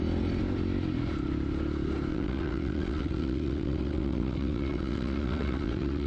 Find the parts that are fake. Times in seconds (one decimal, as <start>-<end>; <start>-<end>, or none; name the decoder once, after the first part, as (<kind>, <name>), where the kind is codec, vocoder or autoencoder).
2.1-6.1 (vocoder, WaveNeXt)